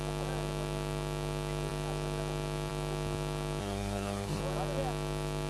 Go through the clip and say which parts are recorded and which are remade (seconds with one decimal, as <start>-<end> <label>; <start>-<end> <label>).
0.0-3.6 recorded; 3.6-4.4 remade; 4.4-5.5 recorded